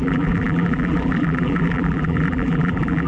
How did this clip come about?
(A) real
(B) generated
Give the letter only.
B